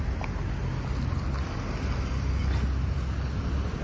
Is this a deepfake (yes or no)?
no